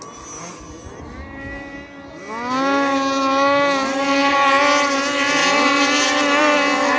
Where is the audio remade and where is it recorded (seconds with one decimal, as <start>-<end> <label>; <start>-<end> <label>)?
0.0-7.0 recorded